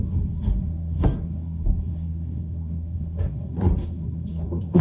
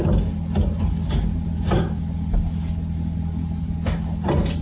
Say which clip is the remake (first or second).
first